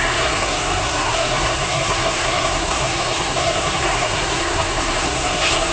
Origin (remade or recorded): remade